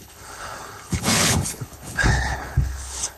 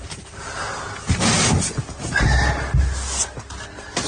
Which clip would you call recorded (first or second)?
second